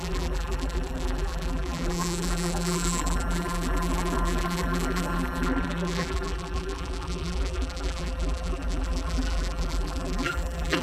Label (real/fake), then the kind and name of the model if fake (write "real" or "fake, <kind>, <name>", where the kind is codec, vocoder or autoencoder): fake, vocoder, BigVGAN v2